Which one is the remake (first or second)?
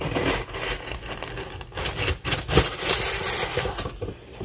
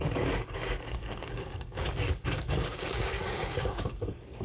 second